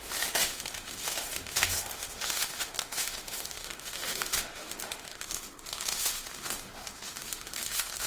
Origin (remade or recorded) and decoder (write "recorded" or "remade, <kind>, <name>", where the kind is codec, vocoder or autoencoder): remade, autoencoder, DAC-VAE